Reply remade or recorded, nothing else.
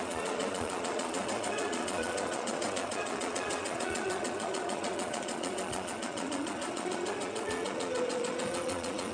remade